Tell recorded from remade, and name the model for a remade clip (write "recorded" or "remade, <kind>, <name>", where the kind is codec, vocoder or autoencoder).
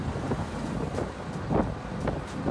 recorded